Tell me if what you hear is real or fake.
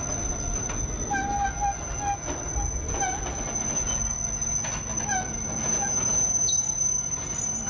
real